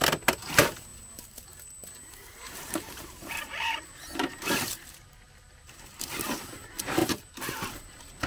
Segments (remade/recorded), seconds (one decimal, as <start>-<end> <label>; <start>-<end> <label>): 0.0-0.9 recorded; 0.9-4.6 remade; 4.6-7.0 recorded; 7.0-7.7 remade; 7.7-8.3 recorded